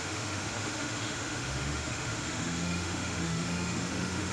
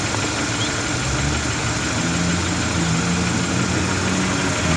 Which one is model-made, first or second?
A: first